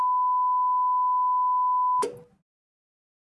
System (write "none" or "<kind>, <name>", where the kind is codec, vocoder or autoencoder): none